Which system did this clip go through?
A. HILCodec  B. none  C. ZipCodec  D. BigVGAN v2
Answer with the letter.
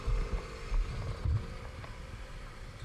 B